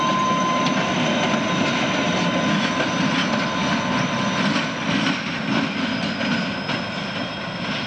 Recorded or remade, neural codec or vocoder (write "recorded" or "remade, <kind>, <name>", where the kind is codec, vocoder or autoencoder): recorded